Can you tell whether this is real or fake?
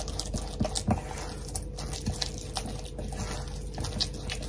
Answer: real